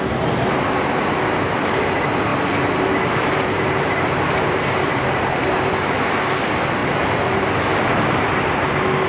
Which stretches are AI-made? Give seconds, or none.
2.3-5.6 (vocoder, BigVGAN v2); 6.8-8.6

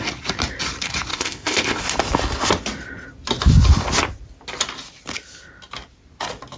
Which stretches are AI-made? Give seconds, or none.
1.1-1.8 (codec, ZipCodec)

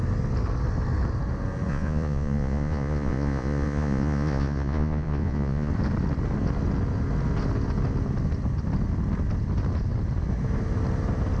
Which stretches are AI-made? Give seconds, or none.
1.7-5.7 (vocoder, Vocos)

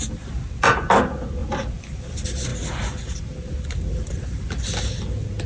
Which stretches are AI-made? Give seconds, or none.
none